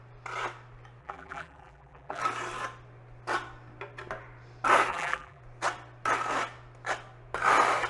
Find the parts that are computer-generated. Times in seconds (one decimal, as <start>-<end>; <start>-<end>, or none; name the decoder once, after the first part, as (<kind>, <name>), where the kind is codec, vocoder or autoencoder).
1.0-2.2 (vocoder, BigVGAN v2); 4.9-5.4